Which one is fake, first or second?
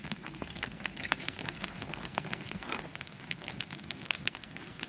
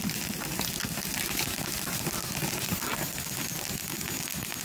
first